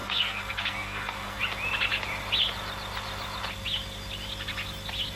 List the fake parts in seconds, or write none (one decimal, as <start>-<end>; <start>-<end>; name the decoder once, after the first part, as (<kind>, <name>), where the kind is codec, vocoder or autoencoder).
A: 0.0-1.4 (codec, SNAC)